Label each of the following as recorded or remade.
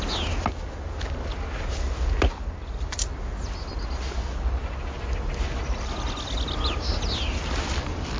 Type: recorded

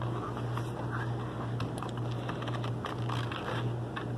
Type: recorded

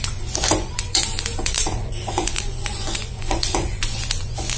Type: remade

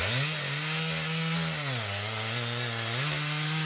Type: recorded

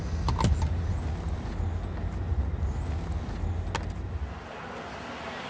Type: recorded